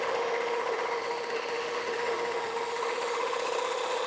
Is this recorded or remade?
remade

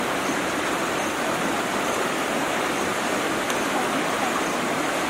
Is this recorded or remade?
recorded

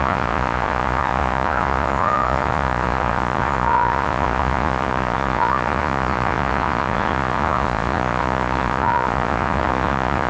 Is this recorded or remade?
remade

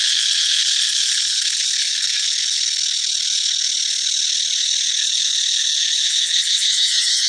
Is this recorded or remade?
remade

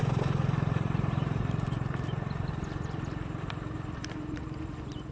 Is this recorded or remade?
remade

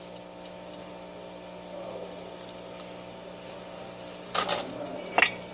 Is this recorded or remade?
recorded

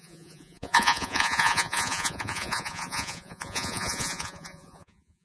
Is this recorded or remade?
remade